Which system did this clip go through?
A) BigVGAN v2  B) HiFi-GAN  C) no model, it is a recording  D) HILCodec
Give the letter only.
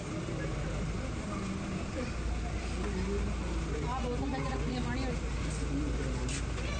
C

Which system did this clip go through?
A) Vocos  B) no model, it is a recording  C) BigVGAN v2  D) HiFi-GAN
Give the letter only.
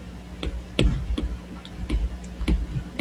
B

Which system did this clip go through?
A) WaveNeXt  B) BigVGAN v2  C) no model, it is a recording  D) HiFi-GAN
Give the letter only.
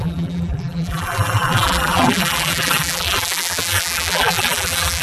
B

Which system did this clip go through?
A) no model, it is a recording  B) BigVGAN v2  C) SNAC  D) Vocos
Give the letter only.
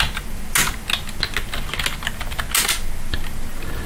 A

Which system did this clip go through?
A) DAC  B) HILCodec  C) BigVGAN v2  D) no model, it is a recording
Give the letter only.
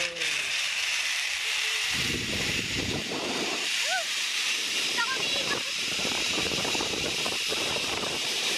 C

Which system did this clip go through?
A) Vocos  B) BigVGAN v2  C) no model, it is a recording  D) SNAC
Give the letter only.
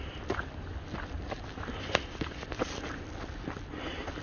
B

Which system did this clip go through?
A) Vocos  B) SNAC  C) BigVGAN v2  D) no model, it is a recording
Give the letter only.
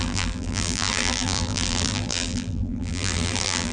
C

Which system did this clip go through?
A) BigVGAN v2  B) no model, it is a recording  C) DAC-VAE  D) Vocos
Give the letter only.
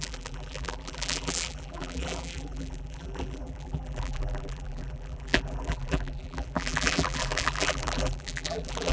A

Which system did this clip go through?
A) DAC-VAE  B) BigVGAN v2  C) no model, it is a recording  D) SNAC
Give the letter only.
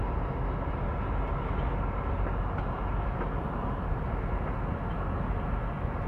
C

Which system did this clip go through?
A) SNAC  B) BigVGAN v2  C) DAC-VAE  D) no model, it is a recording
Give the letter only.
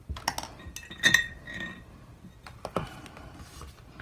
D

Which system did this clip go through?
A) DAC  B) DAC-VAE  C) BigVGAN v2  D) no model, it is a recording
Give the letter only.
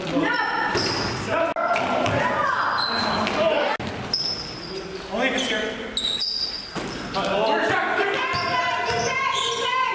D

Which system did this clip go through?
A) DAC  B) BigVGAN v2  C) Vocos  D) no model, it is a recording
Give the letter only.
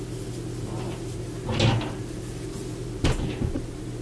D